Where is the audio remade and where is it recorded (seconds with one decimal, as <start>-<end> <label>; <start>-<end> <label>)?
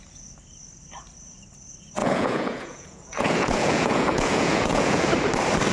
0.0-2.0 recorded; 2.0-5.1 remade; 5.1-5.7 recorded